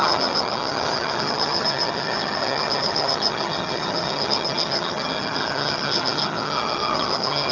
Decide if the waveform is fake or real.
fake